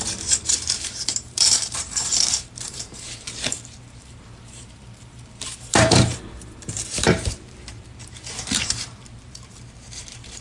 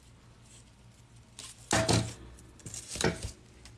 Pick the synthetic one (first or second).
first